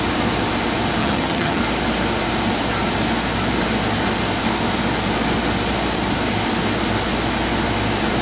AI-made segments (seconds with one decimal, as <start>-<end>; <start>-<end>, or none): 1.0-1.6